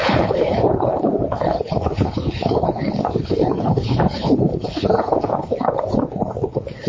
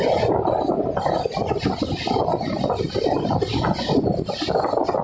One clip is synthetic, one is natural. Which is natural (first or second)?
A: second